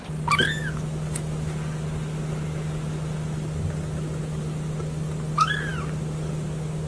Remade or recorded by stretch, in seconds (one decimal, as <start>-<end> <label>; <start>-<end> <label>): 0.0-6.9 recorded